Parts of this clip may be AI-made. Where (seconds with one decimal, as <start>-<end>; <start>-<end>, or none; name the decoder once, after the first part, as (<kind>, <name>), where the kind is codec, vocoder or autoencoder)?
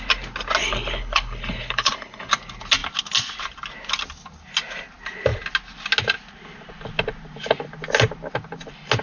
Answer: 0.6-2.3 (codec, HILCodec)